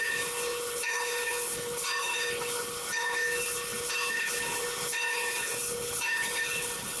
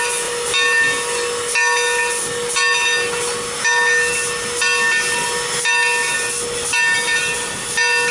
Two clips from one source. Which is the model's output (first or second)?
first